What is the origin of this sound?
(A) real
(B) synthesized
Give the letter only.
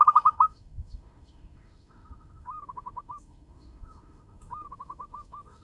B